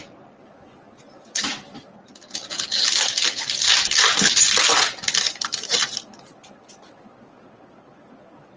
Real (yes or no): yes